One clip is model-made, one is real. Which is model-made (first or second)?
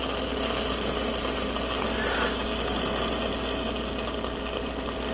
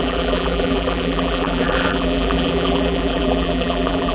second